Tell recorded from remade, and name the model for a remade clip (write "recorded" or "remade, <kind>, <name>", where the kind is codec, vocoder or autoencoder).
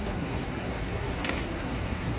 remade, codec, SNAC